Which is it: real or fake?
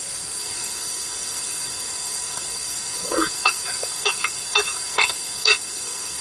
fake